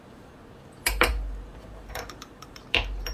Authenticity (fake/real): fake